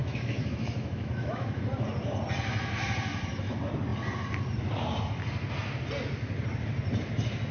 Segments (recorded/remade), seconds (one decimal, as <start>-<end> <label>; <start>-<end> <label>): 0.0-1.6 remade; 1.6-7.5 recorded